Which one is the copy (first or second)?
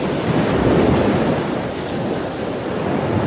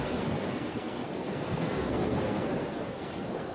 second